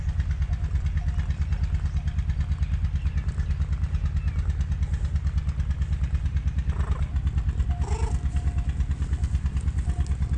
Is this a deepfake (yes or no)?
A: no